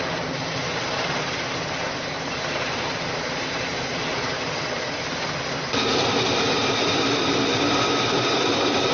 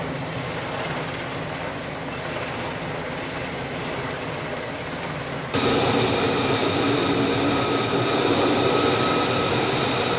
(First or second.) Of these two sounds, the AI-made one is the first